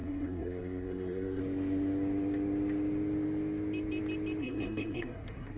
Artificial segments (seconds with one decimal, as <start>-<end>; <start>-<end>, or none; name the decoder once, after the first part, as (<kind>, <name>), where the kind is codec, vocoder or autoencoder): 0.0-1.4 (codec, SNAC); 4.4-5.6